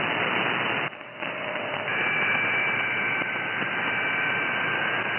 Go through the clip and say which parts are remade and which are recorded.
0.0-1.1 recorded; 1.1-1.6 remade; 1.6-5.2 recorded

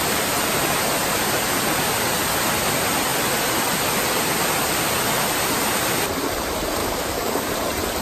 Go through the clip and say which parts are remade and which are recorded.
0.0-6.8 recorded; 6.8-7.5 remade; 7.5-8.0 recorded

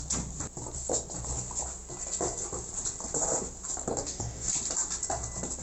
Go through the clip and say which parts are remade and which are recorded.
0.0-3.9 recorded; 3.9-4.5 remade; 4.5-5.6 recorded